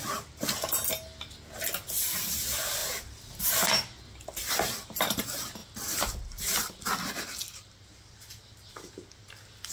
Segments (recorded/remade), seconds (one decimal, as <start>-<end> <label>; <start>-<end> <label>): 0.0-9.7 recorded

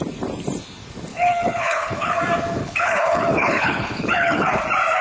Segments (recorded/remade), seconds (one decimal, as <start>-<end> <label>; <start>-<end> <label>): 0.0-1.1 recorded; 1.1-2.2 remade; 2.2-2.6 recorded; 2.6-4.6 remade; 4.6-5.0 recorded

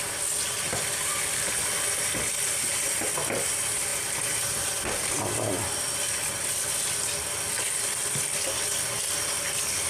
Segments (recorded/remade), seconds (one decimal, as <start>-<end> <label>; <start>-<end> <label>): 0.0-9.9 recorded

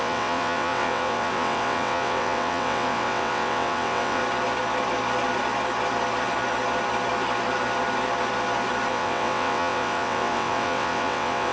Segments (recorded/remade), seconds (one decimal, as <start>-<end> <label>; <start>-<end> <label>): 0.0-4.2 remade; 4.2-8.9 recorded; 8.9-11.5 remade

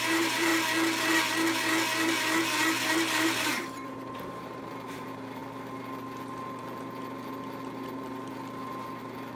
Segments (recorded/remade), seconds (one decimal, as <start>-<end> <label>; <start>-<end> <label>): 0.0-0.5 remade; 0.5-3.1 recorded; 3.1-5.4 remade; 5.4-9.4 recorded

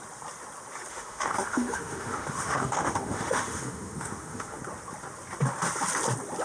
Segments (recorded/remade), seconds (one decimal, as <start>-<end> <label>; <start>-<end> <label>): 0.0-0.9 recorded; 0.9-4.6 remade; 4.6-6.4 recorded

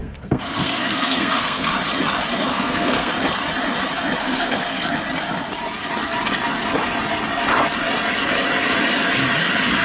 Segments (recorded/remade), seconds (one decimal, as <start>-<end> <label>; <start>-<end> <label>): 0.0-1.7 remade; 1.7-2.5 recorded; 2.5-3.1 remade; 3.1-4.2 recorded; 4.2-4.9 remade; 4.9-9.8 recorded

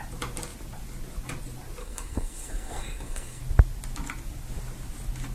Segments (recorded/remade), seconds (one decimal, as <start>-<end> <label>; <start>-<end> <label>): 0.0-1.8 recorded; 1.8-3.4 remade; 3.4-5.3 recorded